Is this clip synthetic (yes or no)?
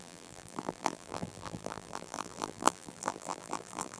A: yes